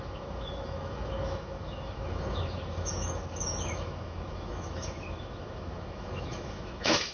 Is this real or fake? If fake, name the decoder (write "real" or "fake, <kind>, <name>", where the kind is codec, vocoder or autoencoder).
fake, autoencoder, DAC-VAE